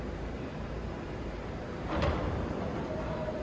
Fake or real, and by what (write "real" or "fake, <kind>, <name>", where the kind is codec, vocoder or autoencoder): fake, vocoder, BigVGAN v2